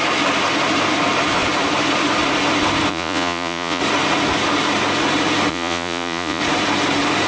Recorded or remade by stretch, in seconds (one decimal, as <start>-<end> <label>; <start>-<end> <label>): 0.0-2.9 recorded; 2.9-3.8 remade; 3.8-5.5 recorded; 5.5-6.4 remade; 6.4-7.3 recorded